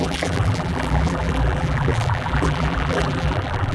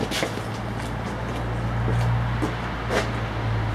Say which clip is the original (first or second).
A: second